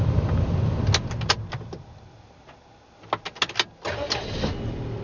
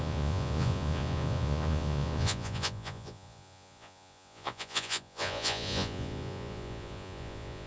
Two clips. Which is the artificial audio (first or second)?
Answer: second